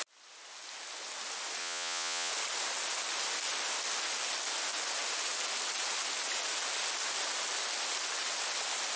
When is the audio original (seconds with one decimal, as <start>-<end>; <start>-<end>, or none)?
0.0-1.6; 2.3-9.0